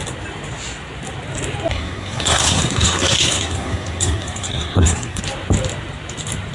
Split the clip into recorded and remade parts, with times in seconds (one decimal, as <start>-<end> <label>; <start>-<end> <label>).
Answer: 0.0-1.7 recorded; 1.7-5.2 remade; 5.2-6.5 recorded